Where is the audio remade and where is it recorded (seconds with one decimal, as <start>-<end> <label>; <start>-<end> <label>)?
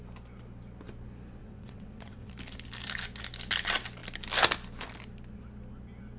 0.0-1.4 recorded; 1.4-2.3 remade; 2.3-6.2 recorded